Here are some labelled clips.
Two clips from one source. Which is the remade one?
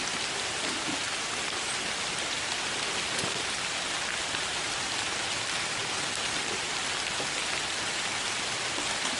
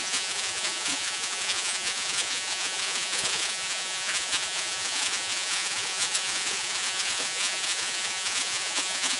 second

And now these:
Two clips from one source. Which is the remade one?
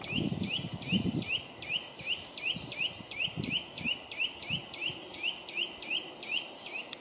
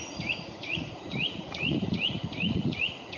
second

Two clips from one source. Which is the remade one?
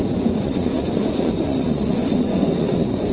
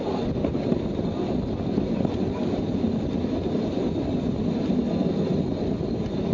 first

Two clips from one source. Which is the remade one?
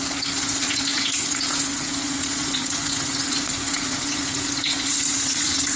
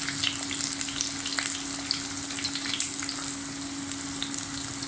first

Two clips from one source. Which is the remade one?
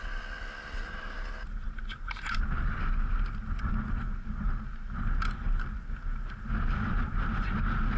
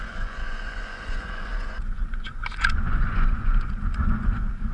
second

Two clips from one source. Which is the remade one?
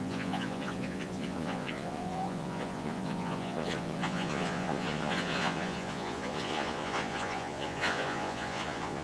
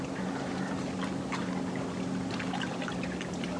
first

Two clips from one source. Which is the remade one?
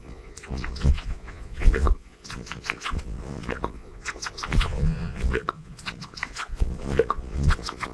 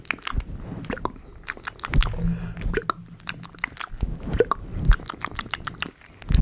first